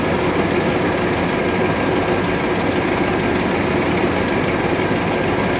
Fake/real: real